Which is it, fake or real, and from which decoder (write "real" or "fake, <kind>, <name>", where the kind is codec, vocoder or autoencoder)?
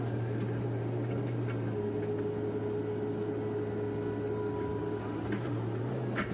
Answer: real